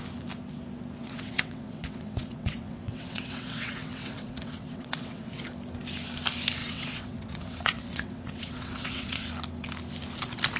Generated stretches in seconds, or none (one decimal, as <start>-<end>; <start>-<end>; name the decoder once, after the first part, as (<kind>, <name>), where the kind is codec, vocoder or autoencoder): 1.0-5.4 (vocoder, WaveNeXt); 6.6-9.3